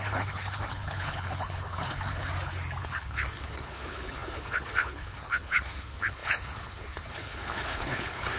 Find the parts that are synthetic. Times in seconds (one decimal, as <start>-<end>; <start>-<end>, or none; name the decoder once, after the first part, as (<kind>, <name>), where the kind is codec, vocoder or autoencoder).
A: 0.0-2.3 (codec, HILCodec); 2.8-8.4